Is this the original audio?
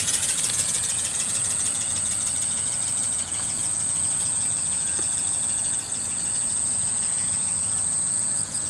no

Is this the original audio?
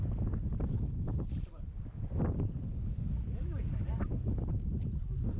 yes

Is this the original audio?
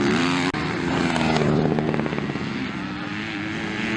yes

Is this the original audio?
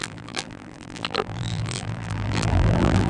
no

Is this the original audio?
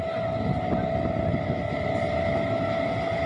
yes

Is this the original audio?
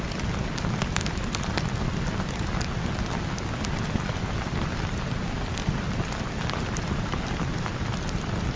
yes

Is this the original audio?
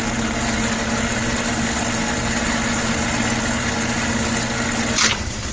yes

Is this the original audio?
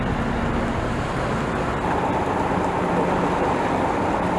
yes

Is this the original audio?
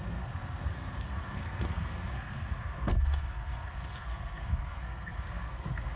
no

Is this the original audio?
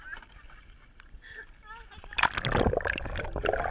yes